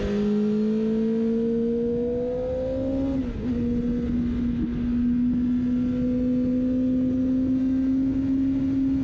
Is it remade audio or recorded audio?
recorded